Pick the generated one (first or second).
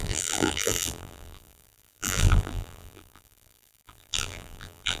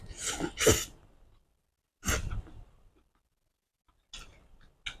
first